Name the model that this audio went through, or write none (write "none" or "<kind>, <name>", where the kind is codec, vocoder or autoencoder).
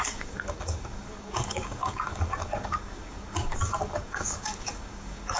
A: codec, DAC